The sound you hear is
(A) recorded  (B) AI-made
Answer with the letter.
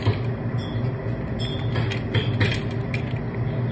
A